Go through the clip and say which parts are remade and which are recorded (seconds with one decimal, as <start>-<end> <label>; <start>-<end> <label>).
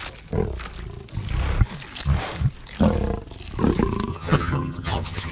0.0-4.1 recorded; 4.1-5.3 remade